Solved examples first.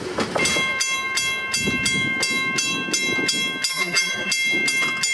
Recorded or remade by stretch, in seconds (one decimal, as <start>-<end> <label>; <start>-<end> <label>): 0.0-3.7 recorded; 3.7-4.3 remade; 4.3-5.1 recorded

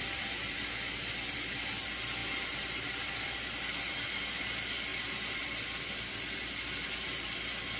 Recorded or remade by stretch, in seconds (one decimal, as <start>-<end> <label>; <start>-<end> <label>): 0.0-0.7 remade; 0.7-2.2 recorded; 2.2-4.4 remade; 4.4-4.9 recorded; 4.9-6.2 remade; 6.2-7.8 recorded

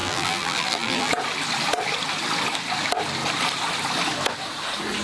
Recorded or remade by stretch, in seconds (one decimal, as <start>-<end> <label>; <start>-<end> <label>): 0.0-1.1 remade; 1.1-5.0 recorded

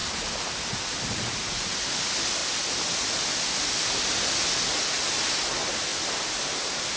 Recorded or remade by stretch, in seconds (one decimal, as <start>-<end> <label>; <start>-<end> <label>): 0.0-1.9 remade; 1.9-7.0 recorded

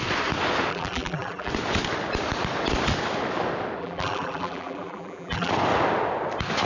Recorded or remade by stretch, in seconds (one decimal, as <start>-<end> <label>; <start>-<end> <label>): 0.0-0.7 recorded; 0.7-1.5 remade; 1.5-3.8 recorded; 3.8-5.5 remade; 5.5-6.7 recorded

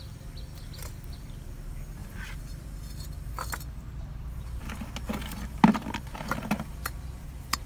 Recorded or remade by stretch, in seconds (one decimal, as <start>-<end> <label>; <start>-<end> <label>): 0.0-7.7 recorded